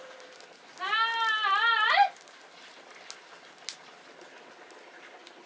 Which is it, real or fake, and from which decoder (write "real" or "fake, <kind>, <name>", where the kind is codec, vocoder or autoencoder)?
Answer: real